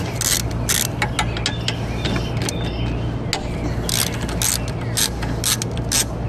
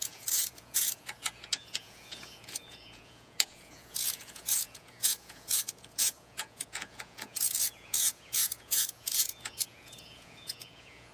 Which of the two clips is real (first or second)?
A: first